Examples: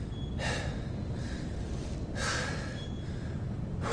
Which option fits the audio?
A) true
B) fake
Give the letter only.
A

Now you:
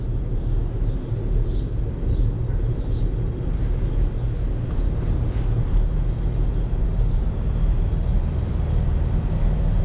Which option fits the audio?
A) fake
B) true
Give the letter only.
B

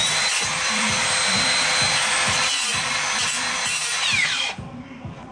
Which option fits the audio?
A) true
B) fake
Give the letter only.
B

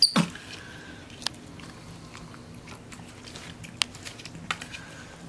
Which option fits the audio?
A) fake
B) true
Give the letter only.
B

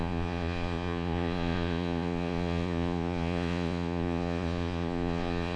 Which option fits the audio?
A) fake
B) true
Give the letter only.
A